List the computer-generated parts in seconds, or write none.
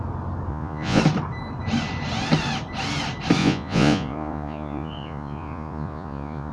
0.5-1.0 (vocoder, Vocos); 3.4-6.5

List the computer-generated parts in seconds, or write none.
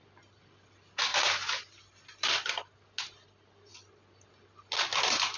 none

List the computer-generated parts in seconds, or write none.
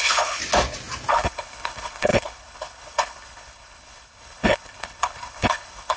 0.0-0.4 (codec, HILCodec); 1.1-6.0